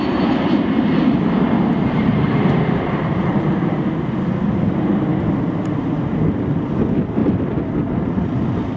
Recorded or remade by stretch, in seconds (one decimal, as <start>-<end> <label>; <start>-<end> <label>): 0.0-1.7 recorded; 1.7-3.8 remade; 3.8-8.8 recorded